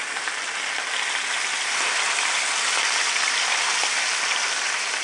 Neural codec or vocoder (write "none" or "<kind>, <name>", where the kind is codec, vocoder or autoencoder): none